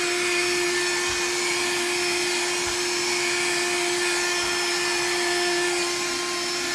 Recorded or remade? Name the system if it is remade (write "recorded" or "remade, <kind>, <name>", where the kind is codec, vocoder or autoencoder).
recorded